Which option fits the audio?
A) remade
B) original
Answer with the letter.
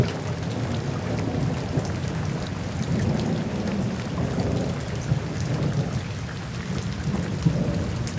B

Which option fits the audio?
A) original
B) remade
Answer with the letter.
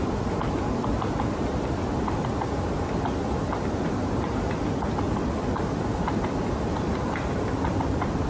A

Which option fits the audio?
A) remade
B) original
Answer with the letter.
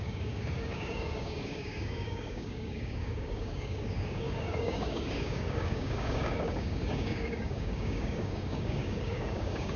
A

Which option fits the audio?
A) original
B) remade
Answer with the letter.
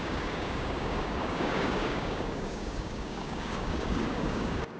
B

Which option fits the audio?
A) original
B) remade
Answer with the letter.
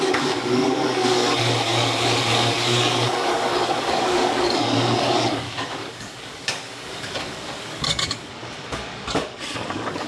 B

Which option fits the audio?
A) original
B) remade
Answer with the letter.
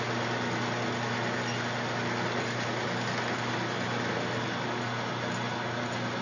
A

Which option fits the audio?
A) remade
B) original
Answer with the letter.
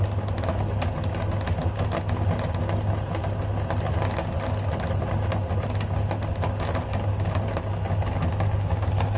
B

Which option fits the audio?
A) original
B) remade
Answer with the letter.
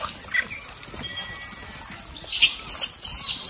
A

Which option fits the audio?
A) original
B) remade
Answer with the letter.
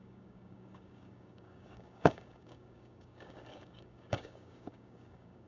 B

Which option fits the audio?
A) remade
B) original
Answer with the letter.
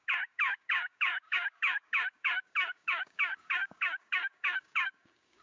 A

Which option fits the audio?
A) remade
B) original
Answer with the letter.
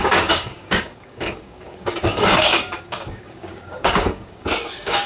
A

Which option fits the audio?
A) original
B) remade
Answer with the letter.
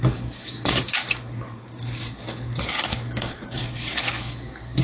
B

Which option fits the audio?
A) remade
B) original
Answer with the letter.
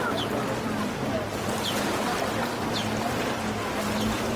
B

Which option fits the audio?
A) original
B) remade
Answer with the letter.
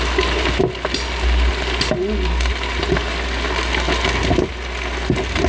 A